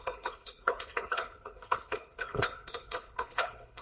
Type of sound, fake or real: fake